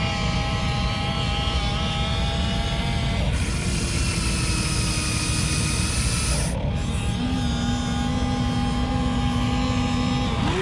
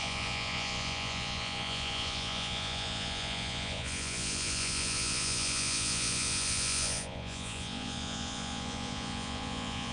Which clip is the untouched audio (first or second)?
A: first